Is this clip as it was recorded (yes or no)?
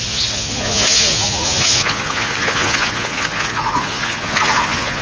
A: no